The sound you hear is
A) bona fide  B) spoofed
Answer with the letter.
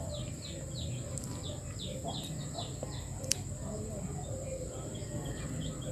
A